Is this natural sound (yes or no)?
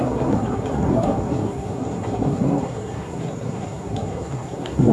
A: no